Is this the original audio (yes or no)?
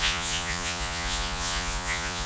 no